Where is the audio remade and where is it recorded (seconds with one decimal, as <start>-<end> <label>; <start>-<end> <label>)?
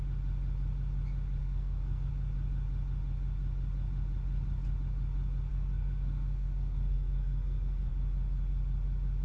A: 0.0-1.4 recorded; 1.4-2.1 remade; 2.1-5.5 recorded; 5.5-7.9 remade; 7.9-9.2 recorded